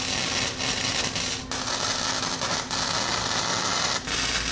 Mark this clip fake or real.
real